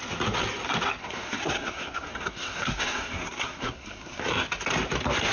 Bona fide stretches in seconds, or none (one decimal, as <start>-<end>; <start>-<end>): 0.0-1.0; 4.2-5.3